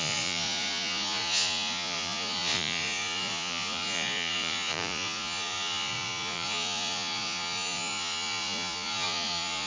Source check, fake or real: fake